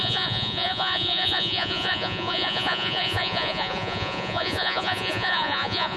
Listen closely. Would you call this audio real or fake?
fake